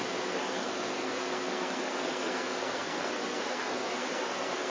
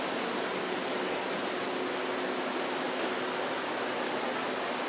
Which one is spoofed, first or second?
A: first